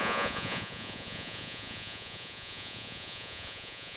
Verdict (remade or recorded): remade